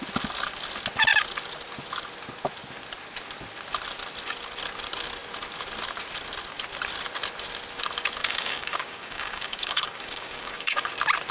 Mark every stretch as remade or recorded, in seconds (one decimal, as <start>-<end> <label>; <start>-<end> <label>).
0.0-8.2 recorded; 8.2-10.9 remade; 10.9-11.3 recorded